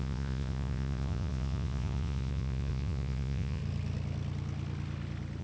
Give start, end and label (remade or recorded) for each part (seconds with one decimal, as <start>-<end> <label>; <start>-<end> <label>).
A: 0.0-3.6 remade; 3.6-5.4 recorded